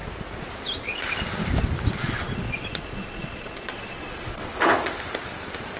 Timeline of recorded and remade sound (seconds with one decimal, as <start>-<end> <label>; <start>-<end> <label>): 0.0-2.0 recorded; 2.0-4.5 remade; 4.5-5.8 recorded